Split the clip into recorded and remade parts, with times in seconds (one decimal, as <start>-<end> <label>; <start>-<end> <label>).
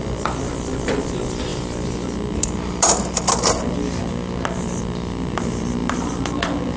0.0-6.8 recorded